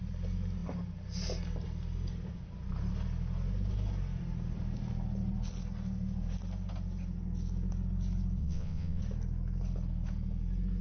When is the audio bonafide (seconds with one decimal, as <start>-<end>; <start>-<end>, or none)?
0.0-8.4; 9.0-10.8